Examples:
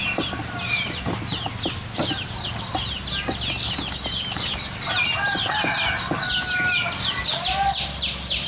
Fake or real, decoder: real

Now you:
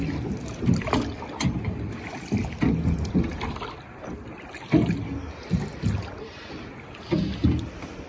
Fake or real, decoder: real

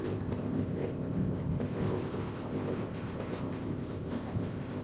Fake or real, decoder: fake, codec, ZipCodec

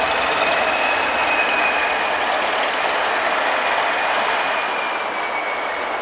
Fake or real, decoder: real